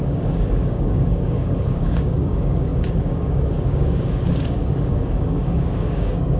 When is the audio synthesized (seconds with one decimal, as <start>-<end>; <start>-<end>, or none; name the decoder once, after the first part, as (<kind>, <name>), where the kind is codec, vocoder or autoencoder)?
0.0-6.4 (codec, DAC)